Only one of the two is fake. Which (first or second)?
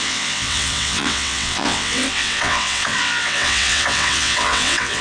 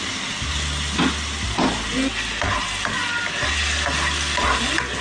first